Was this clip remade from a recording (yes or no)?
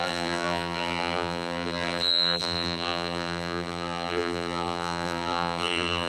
yes